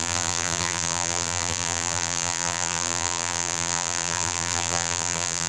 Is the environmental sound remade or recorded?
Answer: remade